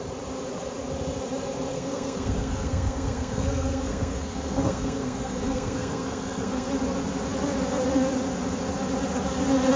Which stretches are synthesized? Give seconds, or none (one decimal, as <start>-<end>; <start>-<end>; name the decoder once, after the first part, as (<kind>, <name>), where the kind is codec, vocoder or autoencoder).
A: 1.7-6.7 (codec, SNAC)